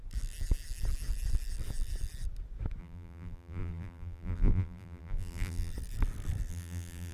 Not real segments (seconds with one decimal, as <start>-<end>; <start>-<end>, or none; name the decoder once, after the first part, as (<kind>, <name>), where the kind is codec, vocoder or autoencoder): 2.8-5.7 (vocoder, BigVGAN v2); 6.5-7.1

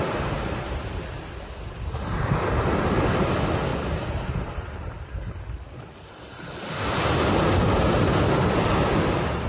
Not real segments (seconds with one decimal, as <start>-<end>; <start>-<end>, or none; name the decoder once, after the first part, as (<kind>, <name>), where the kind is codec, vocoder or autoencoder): 3.7-5.5 (vocoder, BigVGAN v2)

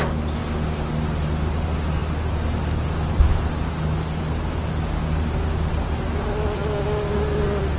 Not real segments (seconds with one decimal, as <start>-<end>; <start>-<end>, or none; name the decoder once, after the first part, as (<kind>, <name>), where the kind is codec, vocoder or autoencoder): 0.4-1.3 (vocoder, BigVGAN v2); 6.6-7.8

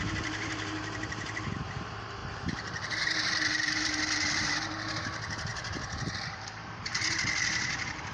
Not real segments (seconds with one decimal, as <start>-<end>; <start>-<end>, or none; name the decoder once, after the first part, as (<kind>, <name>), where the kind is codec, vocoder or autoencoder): 0.0-5.5 (vocoder, BigVGAN v2); 6.4-8.1

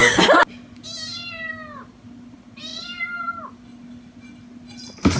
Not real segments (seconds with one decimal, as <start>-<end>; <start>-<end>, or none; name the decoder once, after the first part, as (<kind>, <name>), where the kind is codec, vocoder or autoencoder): 2.7-3.5 (vocoder, BigVGAN v2)

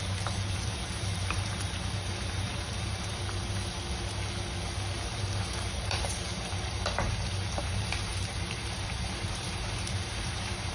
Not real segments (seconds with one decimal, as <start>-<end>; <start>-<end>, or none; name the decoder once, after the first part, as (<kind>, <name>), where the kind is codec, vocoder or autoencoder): 0.0-3.2 (vocoder, BigVGAN v2); 5.1-10.7